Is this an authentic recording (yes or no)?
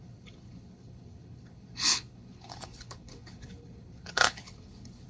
no